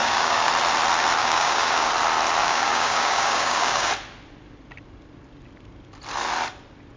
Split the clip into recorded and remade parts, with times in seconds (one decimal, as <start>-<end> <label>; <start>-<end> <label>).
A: 0.0-0.5 remade; 0.5-1.2 recorded; 1.2-1.9 remade; 1.9-2.4 recorded; 2.4-3.9 remade; 3.9-7.0 recorded

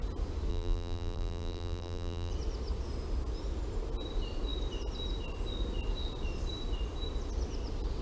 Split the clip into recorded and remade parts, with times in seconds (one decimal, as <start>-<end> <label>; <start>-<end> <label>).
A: 0.0-0.5 recorded; 0.5-2.3 remade; 2.3-8.0 recorded